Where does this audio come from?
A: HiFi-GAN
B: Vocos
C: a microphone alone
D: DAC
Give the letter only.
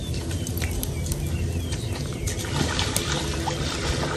C